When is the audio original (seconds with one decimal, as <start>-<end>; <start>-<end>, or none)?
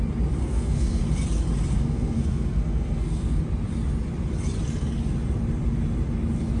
0.0-0.4; 1.0-1.7; 3.4-6.6